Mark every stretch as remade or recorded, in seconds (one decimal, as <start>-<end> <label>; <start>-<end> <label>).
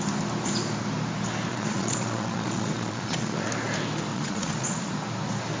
0.0-1.5 recorded; 1.5-3.5 remade; 3.5-4.1 recorded; 4.1-4.9 remade; 4.9-5.6 recorded